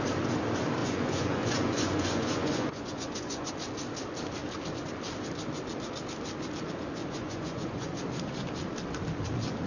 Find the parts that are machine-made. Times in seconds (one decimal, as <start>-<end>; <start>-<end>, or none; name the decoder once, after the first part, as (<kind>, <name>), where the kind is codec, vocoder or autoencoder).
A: 0.8-3.5 (vocoder, Vocos); 7.0-8.0